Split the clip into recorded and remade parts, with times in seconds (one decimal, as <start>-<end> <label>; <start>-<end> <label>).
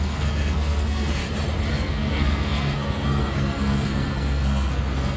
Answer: 0.0-1.2 remade; 1.2-1.7 recorded; 1.7-5.2 remade